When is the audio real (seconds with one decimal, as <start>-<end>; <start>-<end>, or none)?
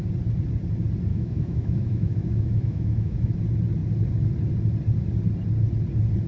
0.0-1.1; 3.3-6.3